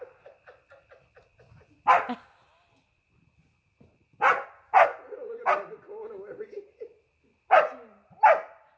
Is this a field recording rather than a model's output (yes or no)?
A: yes